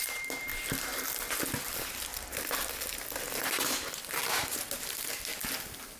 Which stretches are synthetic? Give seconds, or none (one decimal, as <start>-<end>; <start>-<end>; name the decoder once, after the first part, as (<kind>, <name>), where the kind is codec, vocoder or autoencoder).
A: 0.0-0.5 (vocoder, BigVGAN v2); 1.6-2.1; 3.4-5.3